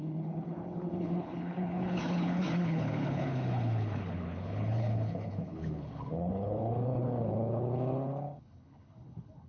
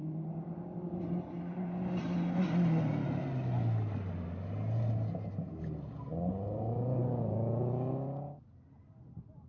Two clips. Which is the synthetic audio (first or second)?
first